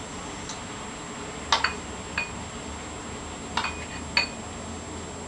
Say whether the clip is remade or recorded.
recorded